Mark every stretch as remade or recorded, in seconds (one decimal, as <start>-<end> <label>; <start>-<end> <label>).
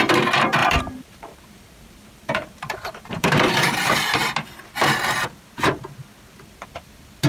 0.0-0.6 recorded; 0.6-3.5 remade; 3.5-7.3 recorded